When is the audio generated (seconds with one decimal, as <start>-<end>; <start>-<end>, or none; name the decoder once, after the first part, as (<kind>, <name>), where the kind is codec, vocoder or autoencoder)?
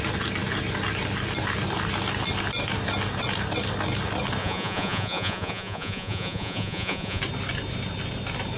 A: 4.4-7.2 (vocoder, Vocos)